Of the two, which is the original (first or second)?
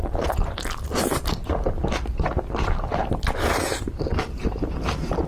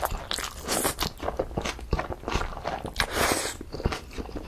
second